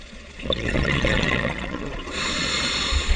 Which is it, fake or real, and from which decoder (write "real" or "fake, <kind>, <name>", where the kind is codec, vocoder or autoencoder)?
fake, vocoder, Vocos